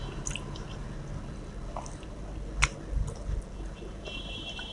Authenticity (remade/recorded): recorded